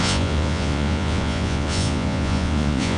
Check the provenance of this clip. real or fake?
fake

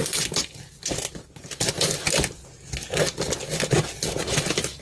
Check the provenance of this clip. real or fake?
real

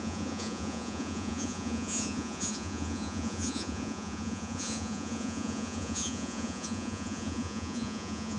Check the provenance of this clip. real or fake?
fake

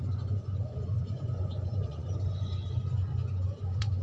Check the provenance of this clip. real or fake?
fake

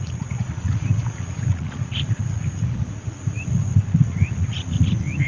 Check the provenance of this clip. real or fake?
fake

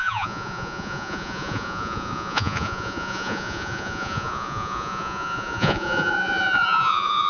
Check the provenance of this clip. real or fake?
fake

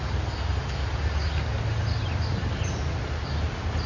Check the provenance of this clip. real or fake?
real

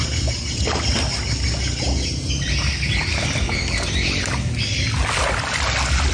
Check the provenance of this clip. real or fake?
real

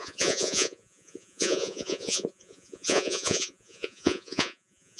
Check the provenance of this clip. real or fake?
fake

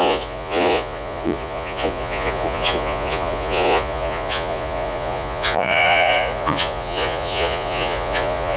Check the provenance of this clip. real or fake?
fake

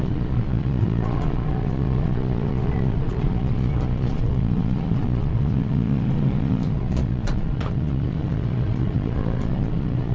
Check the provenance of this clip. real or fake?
fake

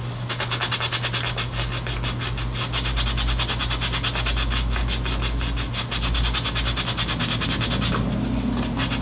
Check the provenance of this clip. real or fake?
real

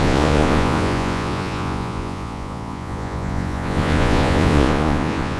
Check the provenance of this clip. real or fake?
fake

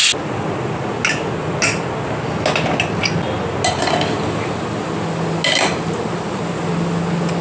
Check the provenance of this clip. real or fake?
real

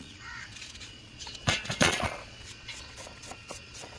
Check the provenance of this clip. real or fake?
fake